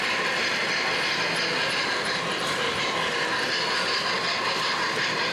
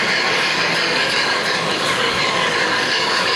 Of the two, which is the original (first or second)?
first